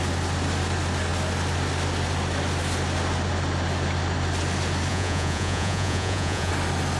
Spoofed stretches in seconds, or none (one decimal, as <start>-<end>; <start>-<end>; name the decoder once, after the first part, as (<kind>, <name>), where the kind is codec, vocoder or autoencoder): 4.9-6.5 (vocoder, Vocos)